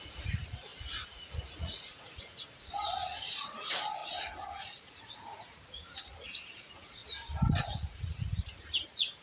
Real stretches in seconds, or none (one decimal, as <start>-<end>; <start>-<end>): 7.0-7.6